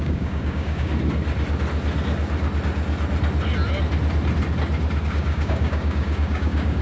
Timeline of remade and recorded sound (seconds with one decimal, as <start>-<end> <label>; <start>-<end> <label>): 0.0-0.9 remade; 0.9-5.0 recorded; 5.0-6.8 remade

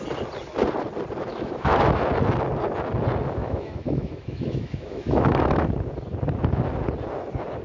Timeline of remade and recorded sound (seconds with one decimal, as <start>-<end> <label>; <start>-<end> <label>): 0.0-1.3 recorded; 1.3-2.0 remade; 2.0-3.4 recorded; 3.4-5.7 remade; 5.7-7.6 recorded

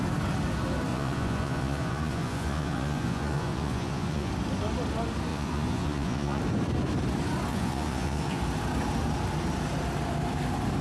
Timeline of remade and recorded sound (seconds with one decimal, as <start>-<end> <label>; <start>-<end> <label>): 0.0-0.9 recorded; 0.9-4.3 remade; 4.3-5.3 recorded; 5.3-6.4 remade; 6.4-7.5 recorded; 7.5-8.4 remade; 8.4-10.8 recorded

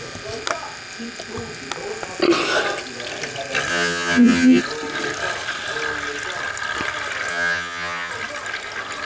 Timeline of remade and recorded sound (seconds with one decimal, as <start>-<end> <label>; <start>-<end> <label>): 0.0-3.7 recorded; 3.7-4.6 remade; 4.6-7.3 recorded; 7.3-8.1 remade; 8.1-9.1 recorded

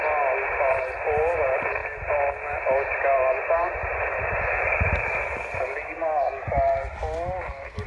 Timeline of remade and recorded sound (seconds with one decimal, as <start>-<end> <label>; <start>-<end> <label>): 0.0-7.9 recorded

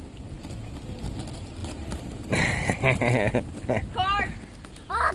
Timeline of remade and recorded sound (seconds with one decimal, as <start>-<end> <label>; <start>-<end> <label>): 0.0-1.6 recorded; 1.6-5.1 remade

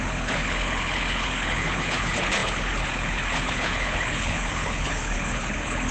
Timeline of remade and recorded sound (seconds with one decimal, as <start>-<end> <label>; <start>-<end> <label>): 0.0-5.9 remade